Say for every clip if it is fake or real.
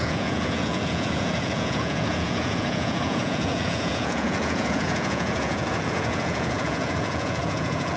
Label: fake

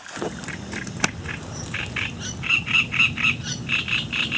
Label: real